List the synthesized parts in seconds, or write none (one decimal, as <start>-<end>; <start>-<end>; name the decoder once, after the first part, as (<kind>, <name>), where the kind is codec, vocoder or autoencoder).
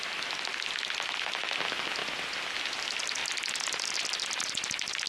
none